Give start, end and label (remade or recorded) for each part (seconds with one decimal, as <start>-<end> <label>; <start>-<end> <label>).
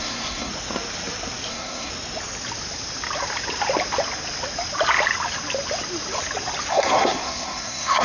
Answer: 0.0-0.5 remade; 0.5-1.5 recorded; 1.5-1.9 remade; 1.9-6.7 recorded; 6.7-8.0 remade